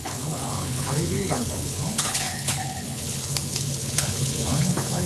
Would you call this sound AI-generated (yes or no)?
yes